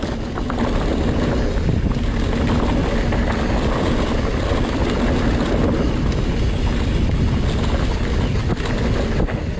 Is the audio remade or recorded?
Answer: recorded